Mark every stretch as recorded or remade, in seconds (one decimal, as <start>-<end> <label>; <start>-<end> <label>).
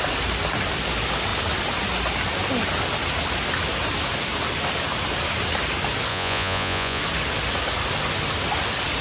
0.0-6.1 recorded; 6.1-7.0 remade; 7.0-9.0 recorded